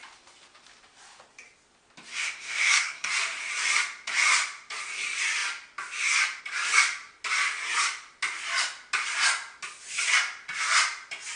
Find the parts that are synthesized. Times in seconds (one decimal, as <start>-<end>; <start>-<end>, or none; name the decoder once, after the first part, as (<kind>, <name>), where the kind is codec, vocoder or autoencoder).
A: 2.1-3.1 (codec, SNAC)

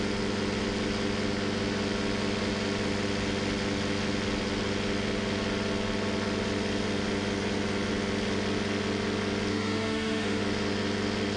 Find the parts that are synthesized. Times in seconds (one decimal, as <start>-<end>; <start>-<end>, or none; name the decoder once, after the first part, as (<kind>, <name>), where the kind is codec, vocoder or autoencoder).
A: 9.5-10.4 (autoencoder, DAC-VAE)

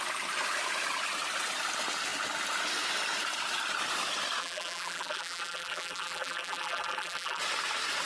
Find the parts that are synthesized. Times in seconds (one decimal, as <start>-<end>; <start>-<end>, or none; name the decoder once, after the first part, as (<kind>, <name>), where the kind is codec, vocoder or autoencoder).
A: 4.4-7.4 (vocoder, BigVGAN v2)

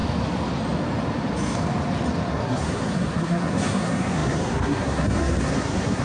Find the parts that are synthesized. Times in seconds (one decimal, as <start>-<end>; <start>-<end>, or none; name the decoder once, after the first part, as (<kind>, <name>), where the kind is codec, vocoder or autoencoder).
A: 2.3-6.0 (codec, SNAC)

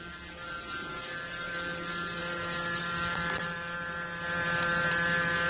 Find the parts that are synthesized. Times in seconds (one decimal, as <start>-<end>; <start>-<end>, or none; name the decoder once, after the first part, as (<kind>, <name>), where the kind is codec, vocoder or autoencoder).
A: none